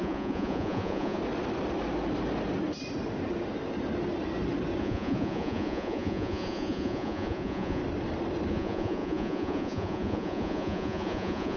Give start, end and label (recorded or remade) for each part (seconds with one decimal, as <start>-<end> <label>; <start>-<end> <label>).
0.0-1.2 remade; 1.2-4.8 recorded; 4.8-7.8 remade; 7.8-8.5 recorded; 8.5-11.6 remade

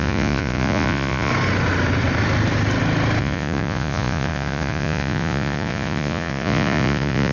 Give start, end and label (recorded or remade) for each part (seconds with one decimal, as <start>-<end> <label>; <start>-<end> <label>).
0.0-1.3 remade; 1.3-3.2 recorded; 3.2-7.3 remade

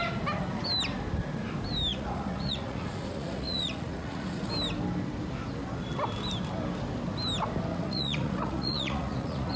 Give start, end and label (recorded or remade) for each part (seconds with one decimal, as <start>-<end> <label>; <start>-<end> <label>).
0.0-1.9 recorded; 1.9-4.5 remade; 4.5-7.7 recorded; 7.7-9.6 remade

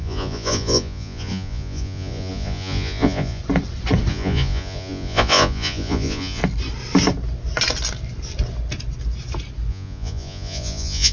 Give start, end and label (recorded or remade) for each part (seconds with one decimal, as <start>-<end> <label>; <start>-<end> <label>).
0.0-3.4 remade; 3.4-4.1 recorded; 4.1-6.4 remade; 6.4-9.7 recorded; 9.7-11.1 remade

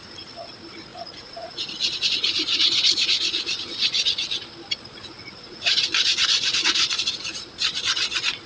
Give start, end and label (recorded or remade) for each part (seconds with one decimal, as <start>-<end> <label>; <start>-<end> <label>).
0.0-0.9 recorded; 0.9-3.6 remade; 3.6-5.1 recorded; 5.1-7.5 remade; 7.5-8.5 recorded

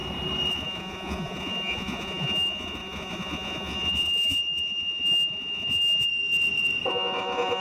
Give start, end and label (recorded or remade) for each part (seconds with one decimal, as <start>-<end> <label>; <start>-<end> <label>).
0.0-0.5 recorded; 0.5-6.1 remade; 6.1-6.9 recorded; 6.9-7.6 remade

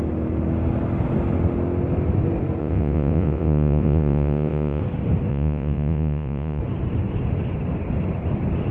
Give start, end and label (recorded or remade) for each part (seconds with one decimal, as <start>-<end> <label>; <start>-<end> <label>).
0.0-2.6 recorded; 2.6-4.8 remade; 4.8-5.3 recorded; 5.3-6.6 remade; 6.6-8.7 recorded